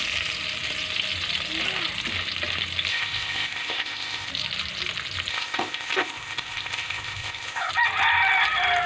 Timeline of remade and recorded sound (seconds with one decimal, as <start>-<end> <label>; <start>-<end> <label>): 0.0-2.9 recorded; 2.9-4.3 remade; 4.3-5.3 recorded; 5.3-7.7 remade; 7.7-8.9 recorded